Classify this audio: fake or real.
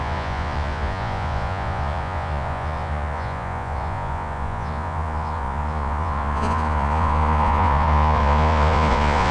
fake